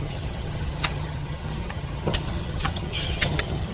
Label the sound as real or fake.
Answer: fake